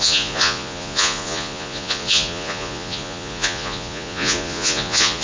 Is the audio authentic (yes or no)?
no